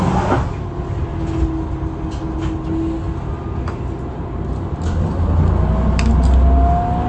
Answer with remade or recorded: recorded